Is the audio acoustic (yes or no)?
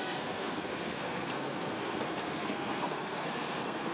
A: no